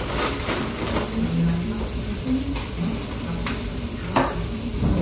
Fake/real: real